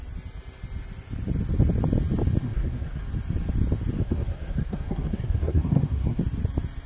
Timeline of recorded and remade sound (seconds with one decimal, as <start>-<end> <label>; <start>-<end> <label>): 0.0-2.4 recorded; 2.4-3.0 remade; 3.0-4.0 recorded; 4.0-6.2 remade; 6.2-6.9 recorded